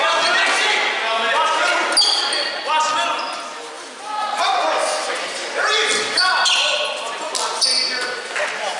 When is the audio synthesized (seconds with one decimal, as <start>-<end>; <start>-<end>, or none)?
none